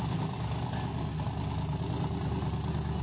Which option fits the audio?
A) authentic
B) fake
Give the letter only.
A